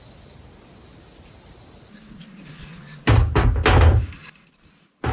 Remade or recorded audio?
recorded